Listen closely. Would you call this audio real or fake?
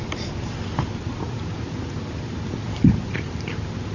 real